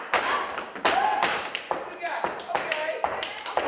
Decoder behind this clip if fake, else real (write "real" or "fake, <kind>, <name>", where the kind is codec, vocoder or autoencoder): real